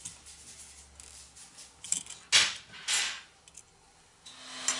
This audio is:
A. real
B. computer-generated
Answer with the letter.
A